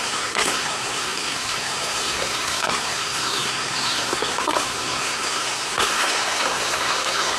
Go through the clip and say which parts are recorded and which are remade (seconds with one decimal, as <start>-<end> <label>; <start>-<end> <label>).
0.0-7.4 remade